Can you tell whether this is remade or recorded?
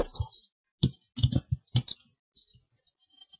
recorded